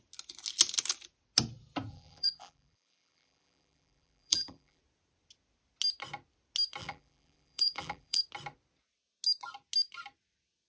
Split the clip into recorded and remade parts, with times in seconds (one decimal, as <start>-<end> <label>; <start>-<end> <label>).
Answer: 0.0-1.9 recorded; 1.9-4.8 remade; 4.8-6.8 recorded; 6.8-8.2 remade; 8.2-10.7 recorded